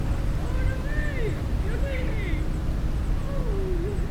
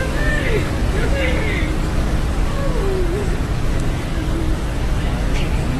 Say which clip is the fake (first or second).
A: second